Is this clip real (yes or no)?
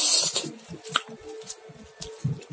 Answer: yes